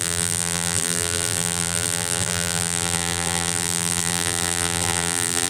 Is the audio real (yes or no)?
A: no